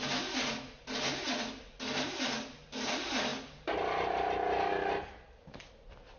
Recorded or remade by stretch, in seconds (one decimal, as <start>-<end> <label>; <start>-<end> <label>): 0.0-6.2 recorded